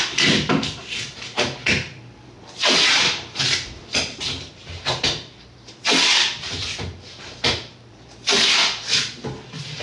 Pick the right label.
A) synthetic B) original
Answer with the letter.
A